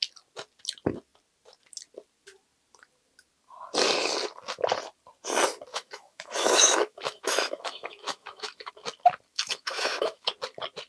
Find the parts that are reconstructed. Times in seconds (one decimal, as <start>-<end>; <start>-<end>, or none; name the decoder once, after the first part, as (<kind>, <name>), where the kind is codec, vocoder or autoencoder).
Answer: 5.7-8.7 (autoencoder, DAC-VAE); 9.3-10.3